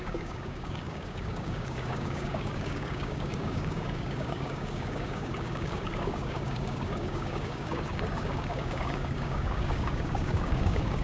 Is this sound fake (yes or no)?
yes